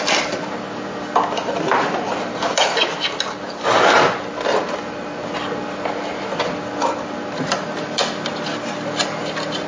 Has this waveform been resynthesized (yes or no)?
no